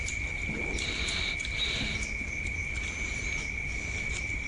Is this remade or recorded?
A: recorded